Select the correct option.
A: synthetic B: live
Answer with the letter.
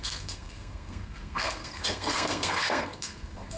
A